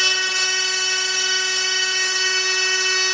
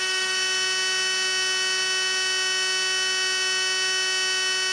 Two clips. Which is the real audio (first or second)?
second